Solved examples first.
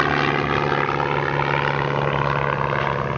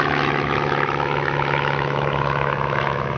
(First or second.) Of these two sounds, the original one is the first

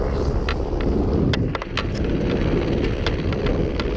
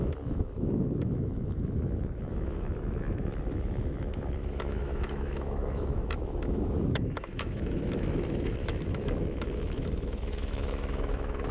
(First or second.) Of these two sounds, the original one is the first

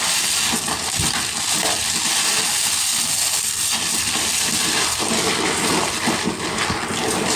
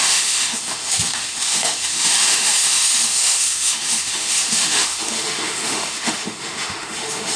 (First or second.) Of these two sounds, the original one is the first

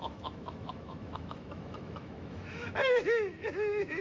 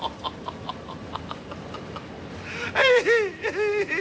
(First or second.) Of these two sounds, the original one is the second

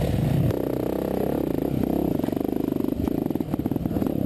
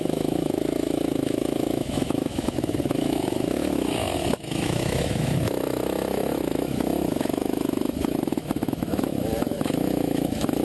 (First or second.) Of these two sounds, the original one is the first